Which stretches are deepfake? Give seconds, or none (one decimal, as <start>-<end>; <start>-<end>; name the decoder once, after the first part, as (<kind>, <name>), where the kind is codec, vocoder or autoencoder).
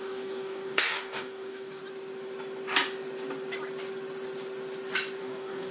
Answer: 0.0-1.8 (codec, DAC); 5.2-5.7